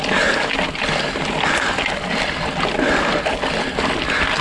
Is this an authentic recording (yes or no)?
yes